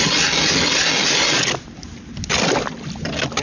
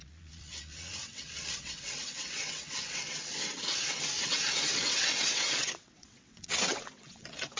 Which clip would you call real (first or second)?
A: first